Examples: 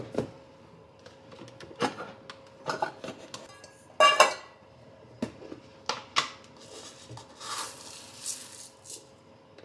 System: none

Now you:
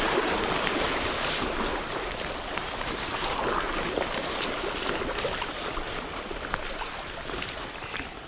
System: none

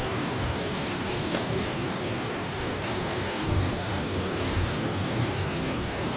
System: codec, DAC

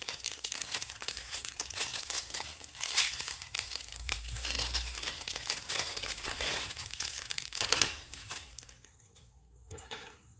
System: codec, SNAC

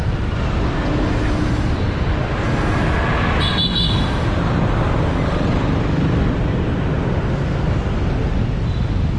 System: none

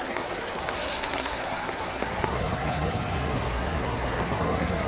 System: codec, SNAC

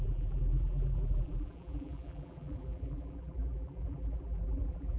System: vocoder, BigVGAN v2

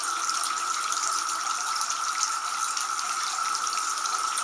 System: none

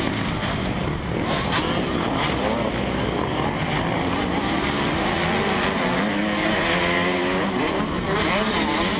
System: none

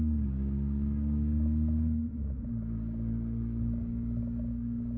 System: codec, DAC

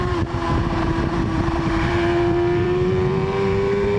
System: vocoder, BigVGAN v2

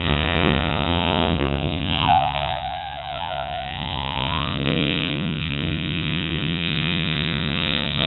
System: vocoder, Vocos